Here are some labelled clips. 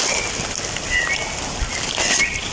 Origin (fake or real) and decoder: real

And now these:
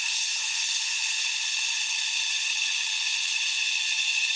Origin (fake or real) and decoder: real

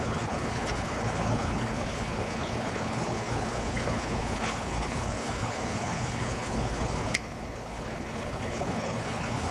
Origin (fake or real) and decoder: fake, codec, HILCodec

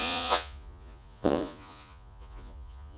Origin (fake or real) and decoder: fake, vocoder, Vocos